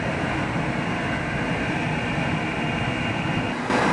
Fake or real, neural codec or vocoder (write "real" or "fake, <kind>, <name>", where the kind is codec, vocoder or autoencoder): real